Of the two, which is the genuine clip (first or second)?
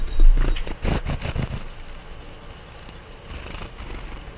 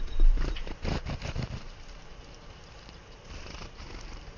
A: first